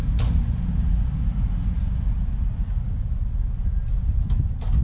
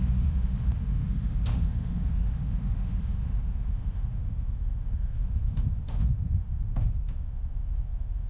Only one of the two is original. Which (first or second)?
first